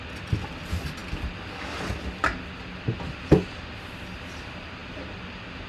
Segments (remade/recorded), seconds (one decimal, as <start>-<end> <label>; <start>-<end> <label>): 0.0-5.7 recorded